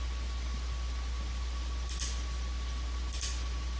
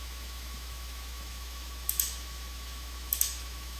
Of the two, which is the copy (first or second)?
second